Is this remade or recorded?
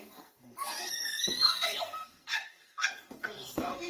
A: remade